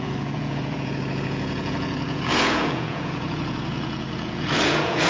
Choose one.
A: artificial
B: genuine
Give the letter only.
A